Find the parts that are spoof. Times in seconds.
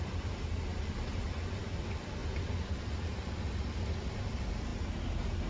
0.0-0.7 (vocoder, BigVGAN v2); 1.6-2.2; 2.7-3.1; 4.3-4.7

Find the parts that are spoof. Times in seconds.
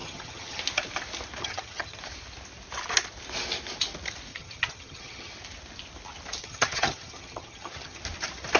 0.0-0.6 (vocoder, HiFi-GAN); 1.4-2.0; 4.3-5.3; 6.4-8.0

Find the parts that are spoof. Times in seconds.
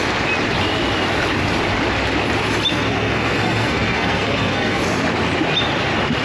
2.7-4.8 (codec, SNAC)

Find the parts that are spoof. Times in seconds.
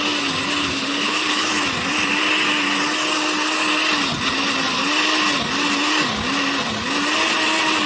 0.6-1.5 (codec, HILCodec)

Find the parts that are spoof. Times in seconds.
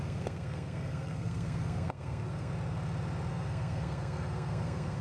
0.0-2.5 (codec, SNAC); 3.3-5.0